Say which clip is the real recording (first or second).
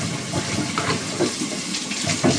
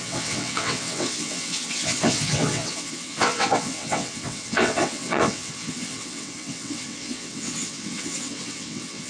first